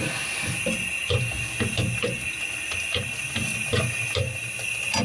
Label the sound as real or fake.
real